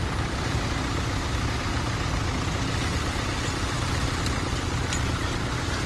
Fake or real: real